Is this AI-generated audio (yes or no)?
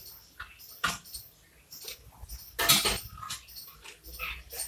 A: no